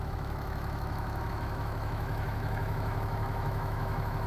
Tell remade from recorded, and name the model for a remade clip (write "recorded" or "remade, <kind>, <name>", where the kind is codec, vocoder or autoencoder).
remade, autoencoder, DAC-VAE